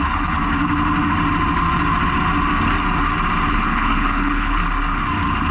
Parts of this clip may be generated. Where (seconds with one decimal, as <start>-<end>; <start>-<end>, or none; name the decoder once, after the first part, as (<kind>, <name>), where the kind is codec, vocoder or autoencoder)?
0.0-0.4 (codec, HILCodec); 3.5-4.6